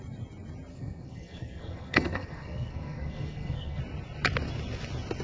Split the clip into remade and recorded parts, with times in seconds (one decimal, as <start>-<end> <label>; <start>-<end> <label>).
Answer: 0.0-0.7 recorded; 0.7-3.8 remade; 3.8-5.2 recorded